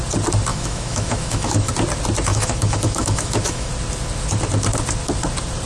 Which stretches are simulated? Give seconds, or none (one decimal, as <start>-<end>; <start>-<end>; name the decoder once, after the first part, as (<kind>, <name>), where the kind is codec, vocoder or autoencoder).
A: 0.5-1.7 (autoencoder, DAC-VAE); 2.3-3.7